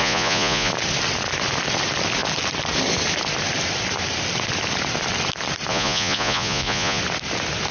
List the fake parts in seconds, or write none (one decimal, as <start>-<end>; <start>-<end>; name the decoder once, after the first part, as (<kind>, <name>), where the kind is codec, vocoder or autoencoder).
0.0-0.7 (vocoder, Vocos); 5.7-7.0